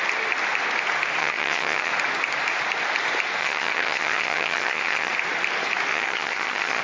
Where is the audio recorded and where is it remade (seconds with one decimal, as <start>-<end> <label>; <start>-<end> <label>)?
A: 0.0-1.2 recorded; 1.2-1.9 remade; 1.9-3.4 recorded; 3.4-5.1 remade; 5.1-5.9 recorded; 5.9-6.8 remade

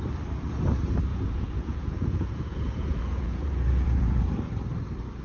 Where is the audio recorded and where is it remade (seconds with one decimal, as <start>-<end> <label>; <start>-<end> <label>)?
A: 0.0-1.1 recorded; 1.1-4.2 remade; 4.2-5.2 recorded

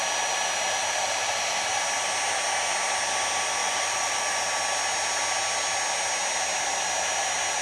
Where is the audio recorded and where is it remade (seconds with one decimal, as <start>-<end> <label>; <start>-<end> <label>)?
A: 0.0-3.6 recorded; 3.6-4.4 remade; 4.4-7.6 recorded

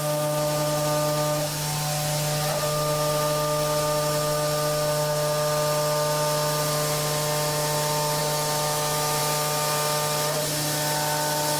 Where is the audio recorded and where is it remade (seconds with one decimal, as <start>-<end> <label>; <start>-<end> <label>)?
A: 0.0-8.2 recorded; 8.2-9.2 remade; 9.2-11.6 recorded

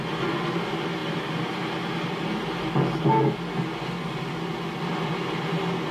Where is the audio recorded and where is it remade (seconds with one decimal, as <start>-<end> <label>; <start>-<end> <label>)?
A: 0.0-1.0 recorded; 1.0-1.6 remade; 1.6-5.9 recorded

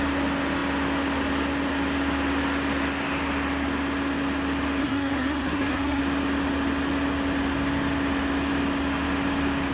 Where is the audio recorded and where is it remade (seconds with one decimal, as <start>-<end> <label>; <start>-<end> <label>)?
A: 0.0-4.8 recorded; 4.8-6.0 remade; 6.0-9.7 recorded

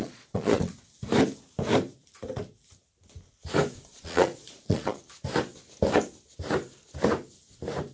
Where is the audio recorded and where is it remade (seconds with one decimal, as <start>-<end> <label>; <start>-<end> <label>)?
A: 0.0-0.7 remade; 0.7-3.9 recorded; 3.9-5.0 remade; 5.0-7.9 recorded